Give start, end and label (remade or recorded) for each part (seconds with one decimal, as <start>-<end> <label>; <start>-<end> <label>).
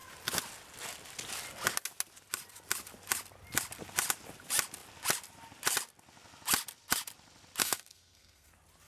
0.0-7.6 recorded; 7.6-8.5 remade; 8.5-8.9 recorded